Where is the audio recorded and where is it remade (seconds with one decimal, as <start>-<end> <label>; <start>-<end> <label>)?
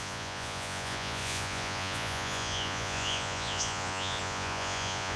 0.0-5.2 remade